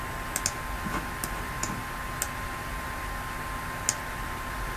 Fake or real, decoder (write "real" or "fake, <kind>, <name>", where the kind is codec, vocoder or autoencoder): real